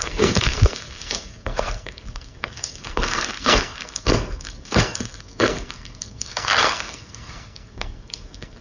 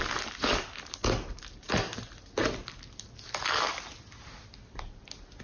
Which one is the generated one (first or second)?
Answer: first